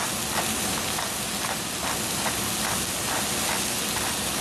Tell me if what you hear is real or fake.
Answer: real